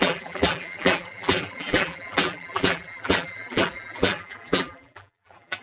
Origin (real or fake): fake